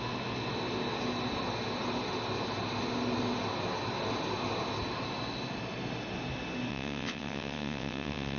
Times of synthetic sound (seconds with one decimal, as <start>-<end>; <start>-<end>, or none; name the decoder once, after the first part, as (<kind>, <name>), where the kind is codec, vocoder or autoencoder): 6.7-8.4 (vocoder, WaveNeXt)